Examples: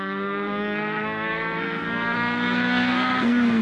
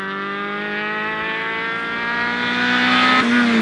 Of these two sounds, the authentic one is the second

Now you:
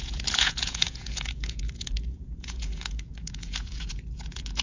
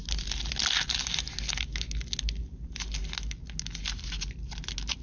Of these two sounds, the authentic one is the second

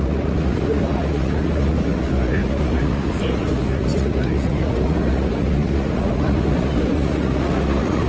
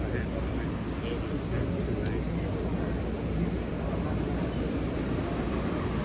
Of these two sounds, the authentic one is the second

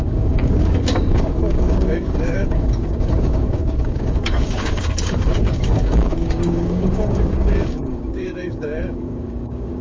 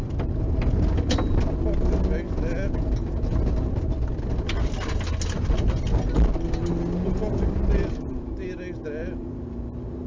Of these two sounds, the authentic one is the second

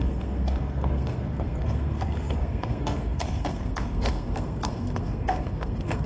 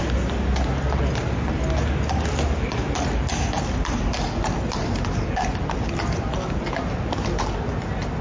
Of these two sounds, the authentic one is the second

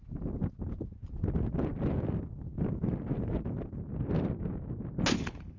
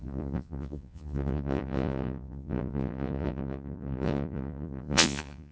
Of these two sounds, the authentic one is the first